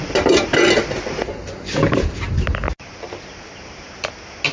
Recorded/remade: recorded